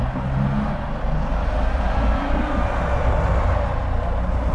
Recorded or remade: recorded